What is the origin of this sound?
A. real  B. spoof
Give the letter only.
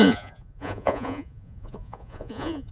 B